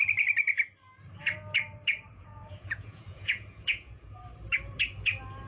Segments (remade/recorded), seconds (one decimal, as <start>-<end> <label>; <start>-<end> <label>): 0.0-2.1 recorded; 2.1-4.2 remade; 4.2-5.5 recorded